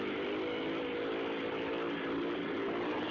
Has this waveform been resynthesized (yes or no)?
no